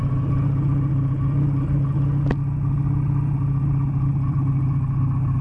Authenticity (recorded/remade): recorded